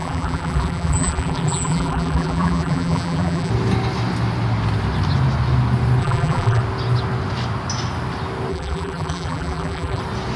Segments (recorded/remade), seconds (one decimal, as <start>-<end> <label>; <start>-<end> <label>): 0.0-3.5 remade; 3.5-6.0 recorded; 6.0-6.6 remade; 6.6-8.5 recorded; 8.5-10.0 remade; 10.0-10.4 recorded